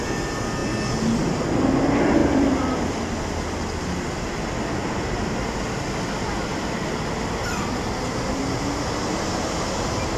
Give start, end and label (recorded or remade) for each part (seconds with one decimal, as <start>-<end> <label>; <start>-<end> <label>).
0.0-2.2 recorded; 2.2-3.8 remade; 3.8-4.8 recorded; 4.8-6.5 remade; 6.5-10.2 recorded